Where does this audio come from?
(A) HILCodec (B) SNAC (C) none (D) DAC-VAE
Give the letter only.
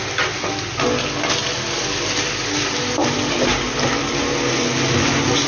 C